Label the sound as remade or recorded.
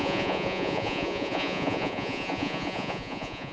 remade